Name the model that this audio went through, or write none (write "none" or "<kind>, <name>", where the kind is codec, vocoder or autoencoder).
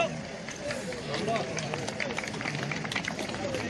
vocoder, BigVGAN v2